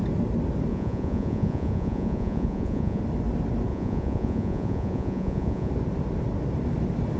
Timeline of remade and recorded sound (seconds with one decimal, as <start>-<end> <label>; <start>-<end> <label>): 0.0-0.7 recorded; 0.7-3.0 remade; 3.0-3.7 recorded; 3.7-5.7 remade; 5.7-7.2 recorded